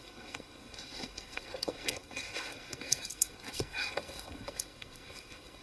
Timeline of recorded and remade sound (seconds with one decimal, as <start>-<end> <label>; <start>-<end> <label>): 0.0-5.6 remade